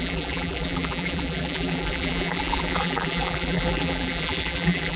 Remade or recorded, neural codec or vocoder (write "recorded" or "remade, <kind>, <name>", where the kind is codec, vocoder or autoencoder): remade, vocoder, BigVGAN v2